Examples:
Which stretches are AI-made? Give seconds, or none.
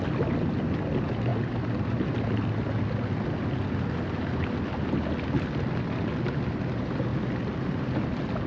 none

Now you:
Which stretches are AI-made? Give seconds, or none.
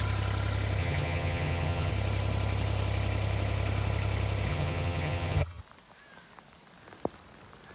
0.8-1.9 (vocoder, HiFi-GAN); 4.5-5.6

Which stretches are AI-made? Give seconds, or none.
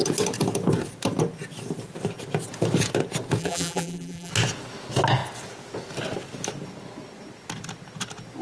3.4-4.3 (vocoder, BigVGAN v2)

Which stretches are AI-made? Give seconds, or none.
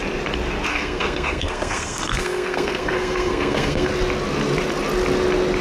0.7-3.9 (codec, SNAC)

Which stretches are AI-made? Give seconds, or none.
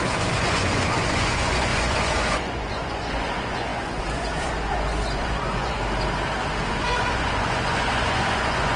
0.0-5.8 (vocoder, Vocos); 6.7-8.8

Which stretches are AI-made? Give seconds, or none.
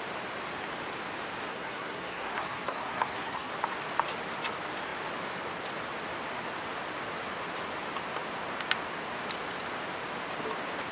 1.5-3.5 (codec, SNAC)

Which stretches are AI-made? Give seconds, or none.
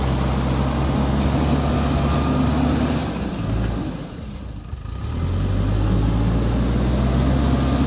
3.0-4.4 (vocoder, BigVGAN v2)